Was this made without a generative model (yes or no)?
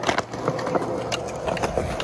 yes